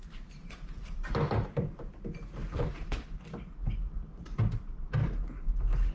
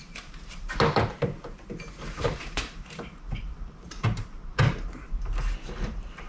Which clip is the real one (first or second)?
first